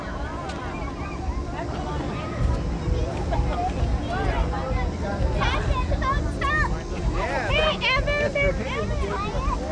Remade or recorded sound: recorded